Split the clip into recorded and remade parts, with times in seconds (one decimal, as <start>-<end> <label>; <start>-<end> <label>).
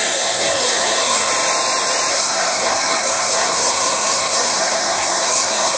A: 0.0-1.3 remade; 1.3-2.1 recorded; 2.1-5.8 remade